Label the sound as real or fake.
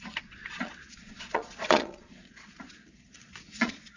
fake